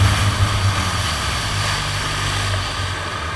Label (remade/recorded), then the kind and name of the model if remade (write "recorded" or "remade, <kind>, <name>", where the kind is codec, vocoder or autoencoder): recorded